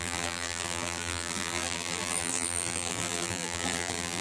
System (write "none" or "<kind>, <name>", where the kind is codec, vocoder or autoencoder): vocoder, BigVGAN v2